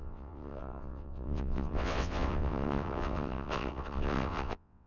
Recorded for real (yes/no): no